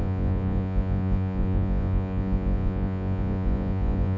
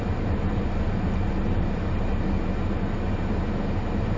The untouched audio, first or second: second